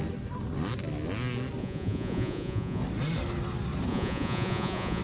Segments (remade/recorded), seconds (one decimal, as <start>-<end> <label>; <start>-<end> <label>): 0.0-1.6 recorded; 1.6-2.8 remade; 2.8-3.9 recorded; 3.9-5.0 remade